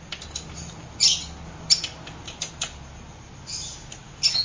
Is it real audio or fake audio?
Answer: real